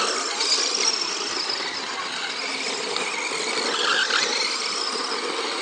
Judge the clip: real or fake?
real